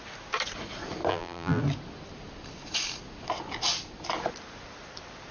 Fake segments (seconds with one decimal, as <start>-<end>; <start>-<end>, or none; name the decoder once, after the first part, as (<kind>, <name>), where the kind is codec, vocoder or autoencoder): 1.1-1.6 (vocoder, BigVGAN v2)